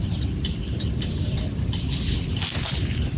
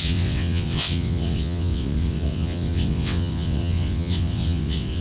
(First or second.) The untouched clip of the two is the first